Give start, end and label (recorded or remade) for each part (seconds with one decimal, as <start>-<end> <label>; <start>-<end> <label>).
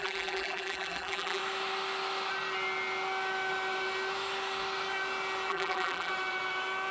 0.0-1.4 remade; 1.4-5.5 recorded; 5.5-6.1 remade; 6.1-6.9 recorded